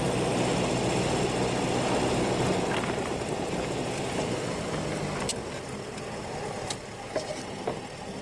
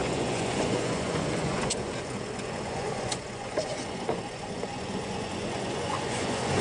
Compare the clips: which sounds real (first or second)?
first